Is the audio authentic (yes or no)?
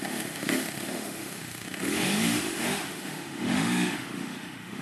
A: no